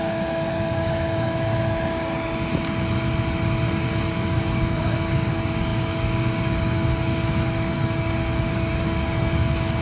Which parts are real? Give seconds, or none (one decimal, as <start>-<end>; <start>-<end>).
1.5-3.7

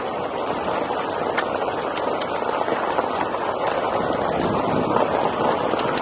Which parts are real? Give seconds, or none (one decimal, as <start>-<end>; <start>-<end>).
0.0-6.0

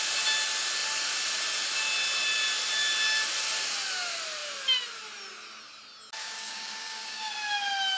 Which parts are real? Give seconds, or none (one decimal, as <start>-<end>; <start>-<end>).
0.0-6.2; 7.3-8.0

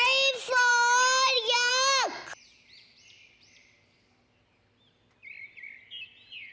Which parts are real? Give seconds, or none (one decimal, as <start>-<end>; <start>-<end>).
0.0-6.5

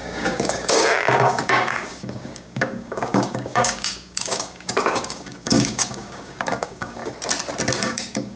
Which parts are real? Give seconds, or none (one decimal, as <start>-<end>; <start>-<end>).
7.0-7.8

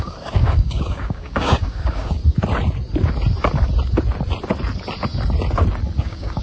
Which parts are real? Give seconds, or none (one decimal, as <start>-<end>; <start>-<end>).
2.2-6.0

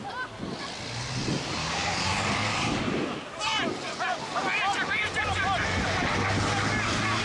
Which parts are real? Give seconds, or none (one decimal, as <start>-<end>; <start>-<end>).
0.0-1.6; 2.8-7.2